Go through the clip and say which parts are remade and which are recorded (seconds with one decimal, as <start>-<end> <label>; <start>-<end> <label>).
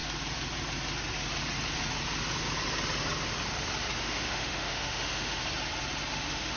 0.0-4.0 recorded; 4.0-5.4 remade; 5.4-6.1 recorded; 6.1-6.6 remade